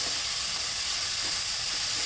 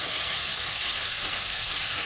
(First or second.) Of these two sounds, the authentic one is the first